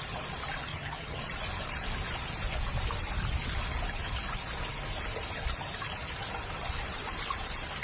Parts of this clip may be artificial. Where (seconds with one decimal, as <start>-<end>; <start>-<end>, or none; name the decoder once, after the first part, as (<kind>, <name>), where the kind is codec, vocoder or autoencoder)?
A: 0.7-1.2 (vocoder, HiFi-GAN)